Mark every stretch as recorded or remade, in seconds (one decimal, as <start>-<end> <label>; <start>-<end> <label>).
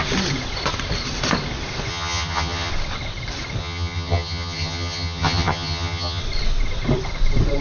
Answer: 0.0-1.9 recorded; 1.9-2.7 remade; 2.7-3.6 recorded; 3.6-6.2 remade; 6.2-7.6 recorded